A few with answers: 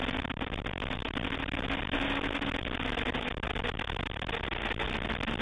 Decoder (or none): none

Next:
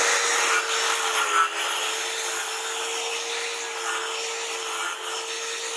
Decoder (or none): none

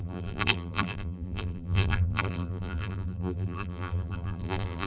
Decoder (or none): vocoder, BigVGAN v2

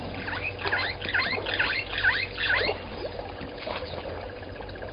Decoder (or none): none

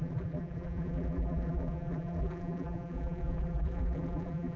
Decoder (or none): vocoder, BigVGAN v2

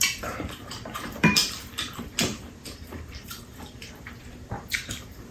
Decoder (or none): vocoder, BigVGAN v2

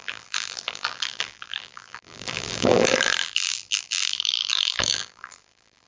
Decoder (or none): vocoder, BigVGAN v2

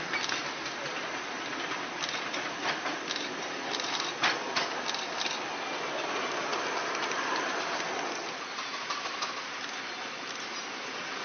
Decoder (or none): none